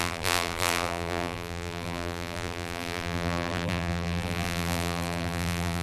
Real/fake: fake